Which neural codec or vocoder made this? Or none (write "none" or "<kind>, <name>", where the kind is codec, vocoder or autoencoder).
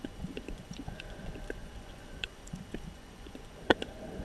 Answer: vocoder, Vocos